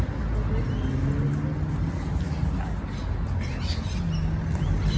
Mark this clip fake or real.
real